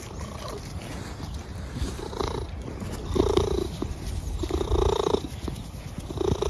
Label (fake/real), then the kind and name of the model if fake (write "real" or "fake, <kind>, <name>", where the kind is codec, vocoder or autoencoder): real